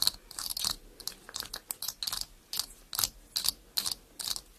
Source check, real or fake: real